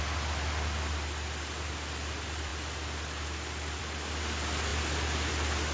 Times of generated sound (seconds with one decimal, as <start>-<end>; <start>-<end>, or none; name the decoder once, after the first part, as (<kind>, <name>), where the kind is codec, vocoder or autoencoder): none

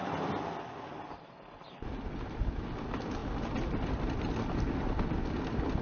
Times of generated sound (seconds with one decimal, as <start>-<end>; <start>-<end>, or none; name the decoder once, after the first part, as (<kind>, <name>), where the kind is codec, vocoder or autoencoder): none

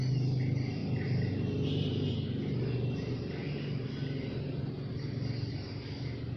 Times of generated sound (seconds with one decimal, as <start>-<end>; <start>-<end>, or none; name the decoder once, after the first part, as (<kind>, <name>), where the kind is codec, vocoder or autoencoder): none

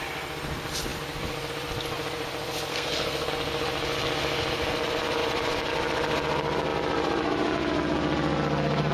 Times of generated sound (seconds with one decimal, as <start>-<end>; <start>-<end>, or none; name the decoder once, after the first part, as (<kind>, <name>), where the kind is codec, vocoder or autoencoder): 2.7-3.3 (codec, SNAC)

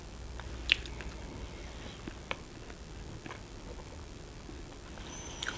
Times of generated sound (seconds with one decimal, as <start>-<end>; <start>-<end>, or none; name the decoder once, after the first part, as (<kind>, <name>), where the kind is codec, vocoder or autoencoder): none

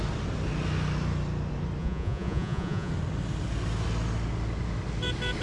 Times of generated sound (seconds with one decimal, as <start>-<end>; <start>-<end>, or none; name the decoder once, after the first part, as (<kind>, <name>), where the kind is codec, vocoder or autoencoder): 1.8-2.9 (vocoder, Vocos)

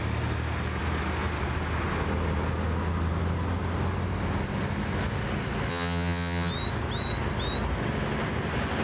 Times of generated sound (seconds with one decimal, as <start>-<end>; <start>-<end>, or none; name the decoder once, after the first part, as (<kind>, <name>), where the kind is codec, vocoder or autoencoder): 5.7-6.5 (vocoder, HiFi-GAN)